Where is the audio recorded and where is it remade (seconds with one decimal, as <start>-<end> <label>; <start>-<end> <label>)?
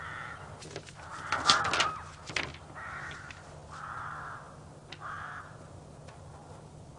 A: 0.0-7.0 recorded